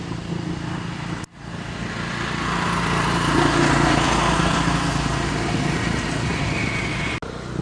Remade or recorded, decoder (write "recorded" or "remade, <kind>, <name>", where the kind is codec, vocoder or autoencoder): recorded